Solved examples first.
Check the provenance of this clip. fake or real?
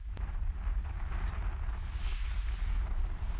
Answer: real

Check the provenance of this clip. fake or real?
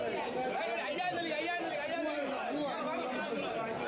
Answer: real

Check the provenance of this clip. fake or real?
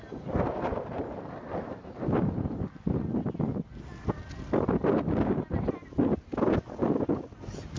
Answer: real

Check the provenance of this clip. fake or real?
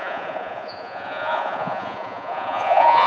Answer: fake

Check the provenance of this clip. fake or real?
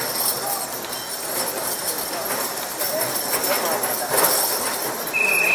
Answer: real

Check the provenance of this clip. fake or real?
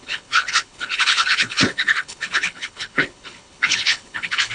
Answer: fake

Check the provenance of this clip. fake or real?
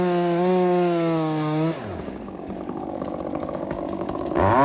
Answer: fake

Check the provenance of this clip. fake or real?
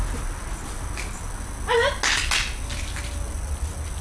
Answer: real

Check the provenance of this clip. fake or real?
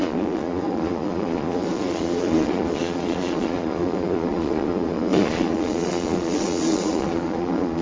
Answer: fake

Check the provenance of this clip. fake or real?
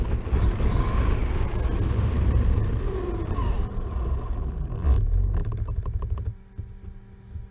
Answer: real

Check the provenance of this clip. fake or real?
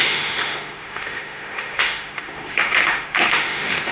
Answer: fake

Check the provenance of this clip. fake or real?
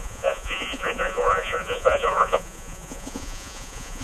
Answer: fake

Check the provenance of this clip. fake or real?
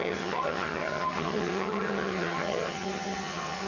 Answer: fake